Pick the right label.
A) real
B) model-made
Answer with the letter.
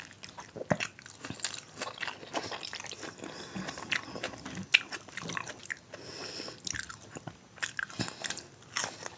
A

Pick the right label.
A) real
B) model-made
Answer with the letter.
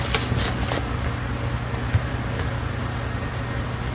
A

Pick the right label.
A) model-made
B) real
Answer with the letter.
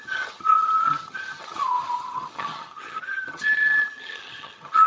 A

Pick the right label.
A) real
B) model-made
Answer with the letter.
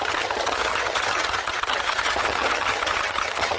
B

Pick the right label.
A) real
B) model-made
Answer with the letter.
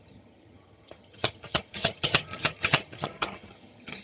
B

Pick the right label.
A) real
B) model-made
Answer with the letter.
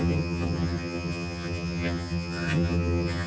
B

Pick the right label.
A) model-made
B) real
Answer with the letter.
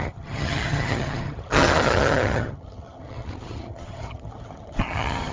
A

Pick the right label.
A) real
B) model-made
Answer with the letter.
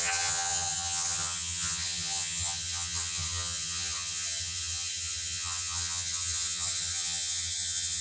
B